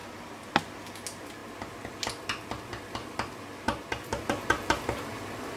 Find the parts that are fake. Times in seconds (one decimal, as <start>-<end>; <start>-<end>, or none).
none